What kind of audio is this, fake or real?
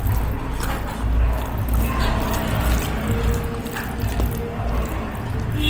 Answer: real